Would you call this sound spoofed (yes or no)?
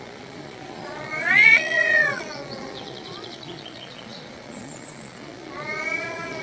yes